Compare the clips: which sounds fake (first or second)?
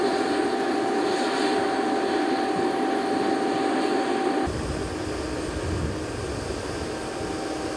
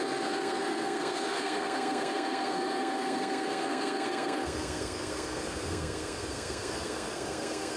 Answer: second